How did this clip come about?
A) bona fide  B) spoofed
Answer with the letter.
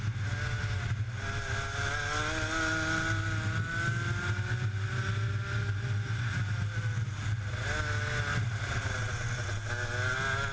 A